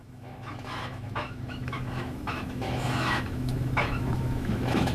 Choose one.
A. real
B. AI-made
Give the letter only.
B